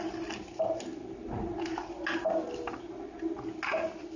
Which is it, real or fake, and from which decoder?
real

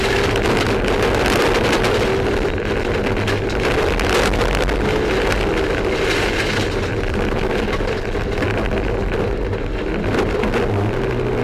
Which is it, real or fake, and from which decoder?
real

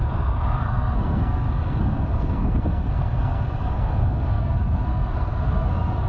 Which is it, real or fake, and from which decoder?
fake, codec, SNAC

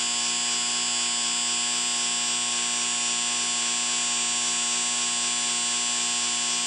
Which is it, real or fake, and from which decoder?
real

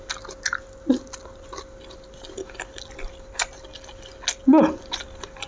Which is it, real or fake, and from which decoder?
real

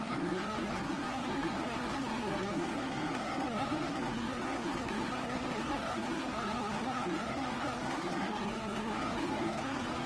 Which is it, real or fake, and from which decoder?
fake, codec, SNAC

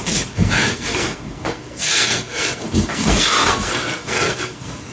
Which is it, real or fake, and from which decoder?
fake, codec, SNAC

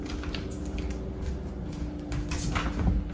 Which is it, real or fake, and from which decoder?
real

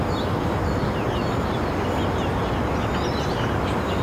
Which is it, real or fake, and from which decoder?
real